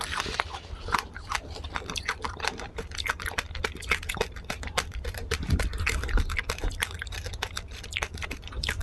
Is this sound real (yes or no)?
no